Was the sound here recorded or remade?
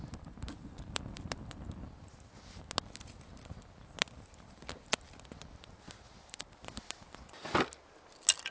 recorded